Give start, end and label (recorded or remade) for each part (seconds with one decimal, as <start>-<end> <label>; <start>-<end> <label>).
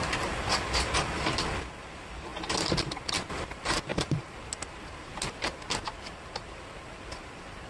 0.0-3.9 recorded; 3.9-4.4 remade; 4.4-7.7 recorded